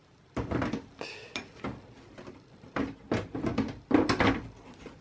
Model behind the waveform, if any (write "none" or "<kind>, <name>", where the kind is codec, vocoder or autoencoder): none